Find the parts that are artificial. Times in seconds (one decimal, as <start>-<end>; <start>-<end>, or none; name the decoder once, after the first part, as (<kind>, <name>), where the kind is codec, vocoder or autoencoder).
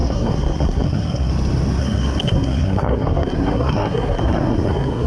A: 0.0-1.3 (codec, SNAC); 1.8-5.1